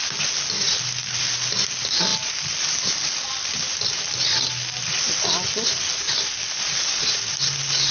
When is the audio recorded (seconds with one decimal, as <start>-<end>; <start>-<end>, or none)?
0.0-7.9